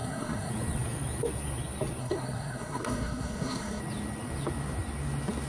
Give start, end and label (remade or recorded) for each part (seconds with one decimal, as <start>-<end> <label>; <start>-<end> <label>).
0.0-0.5 remade; 0.5-2.0 recorded; 2.0-3.8 remade; 3.8-5.5 recorded